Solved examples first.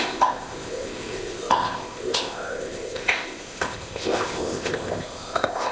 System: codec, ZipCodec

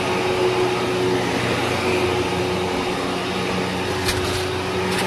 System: none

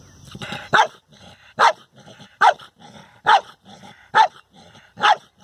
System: vocoder, BigVGAN v2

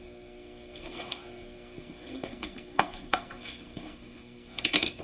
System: codec, SNAC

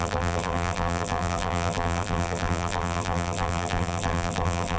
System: vocoder, BigVGAN v2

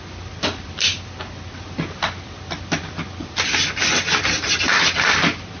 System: none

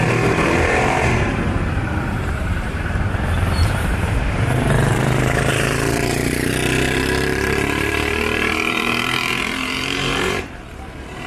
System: vocoder, BigVGAN v2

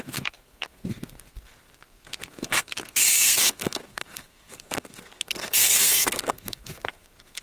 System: codec, SNAC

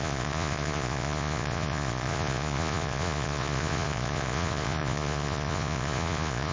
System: vocoder, Vocos